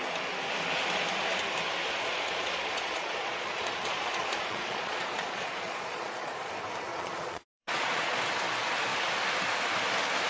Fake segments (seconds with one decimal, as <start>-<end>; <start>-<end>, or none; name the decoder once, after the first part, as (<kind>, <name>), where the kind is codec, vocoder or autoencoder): 1.8-6.5 (vocoder, Vocos); 6.9-8.2

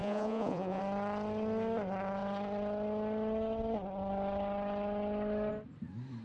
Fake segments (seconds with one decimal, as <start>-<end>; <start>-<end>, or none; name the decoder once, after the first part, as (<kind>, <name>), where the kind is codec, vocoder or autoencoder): 0.0-0.8 (vocoder, Vocos)

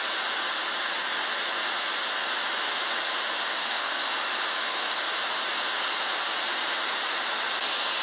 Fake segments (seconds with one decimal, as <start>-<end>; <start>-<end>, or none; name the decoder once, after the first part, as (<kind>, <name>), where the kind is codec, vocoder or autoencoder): 3.6-4.1 (codec, SNAC); 4.6-5.1

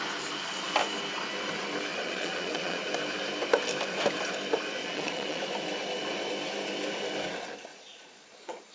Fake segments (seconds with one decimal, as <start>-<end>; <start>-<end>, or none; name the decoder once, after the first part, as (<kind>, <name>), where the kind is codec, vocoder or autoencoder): 1.9-2.9 (vocoder, Vocos); 4.8-5.4; 7.7-8.7

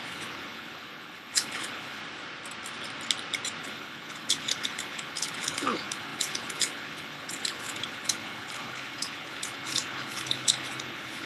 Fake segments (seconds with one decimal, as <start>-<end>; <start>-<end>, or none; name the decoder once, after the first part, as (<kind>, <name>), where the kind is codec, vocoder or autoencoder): 0.0-2.0 (codec, HILCodec); 3.6-11.3